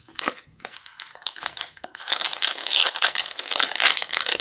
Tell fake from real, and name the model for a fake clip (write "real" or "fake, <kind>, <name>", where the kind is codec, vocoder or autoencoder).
fake, codec, SNAC